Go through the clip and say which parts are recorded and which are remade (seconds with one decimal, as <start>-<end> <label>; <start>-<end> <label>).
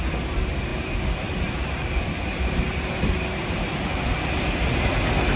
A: 0.0-0.7 recorded; 0.7-3.9 remade; 3.9-5.4 recorded